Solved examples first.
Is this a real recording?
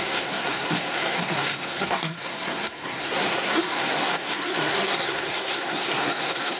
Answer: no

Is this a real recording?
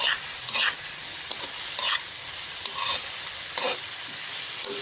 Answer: yes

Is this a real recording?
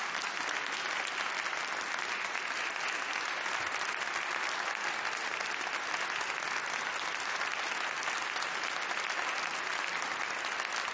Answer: yes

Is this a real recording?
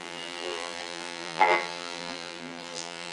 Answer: no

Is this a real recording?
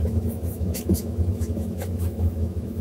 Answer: no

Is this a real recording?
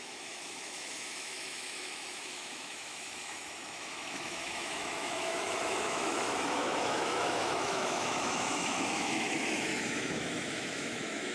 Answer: no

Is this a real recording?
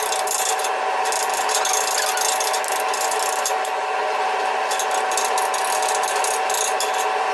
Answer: yes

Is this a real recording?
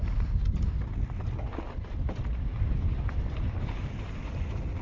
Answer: yes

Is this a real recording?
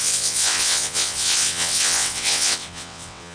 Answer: no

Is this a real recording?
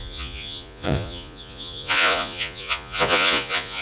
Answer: no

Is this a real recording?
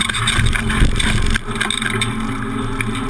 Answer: yes